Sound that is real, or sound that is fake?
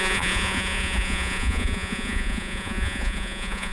fake